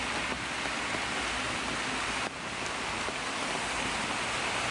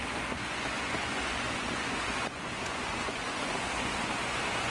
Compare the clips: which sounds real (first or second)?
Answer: first